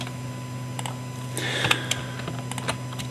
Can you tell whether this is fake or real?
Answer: real